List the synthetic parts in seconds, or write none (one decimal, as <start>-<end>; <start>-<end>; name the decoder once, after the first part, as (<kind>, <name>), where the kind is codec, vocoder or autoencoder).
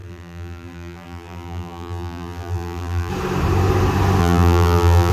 0.0-3.1 (vocoder, BigVGAN v2); 4.2-5.1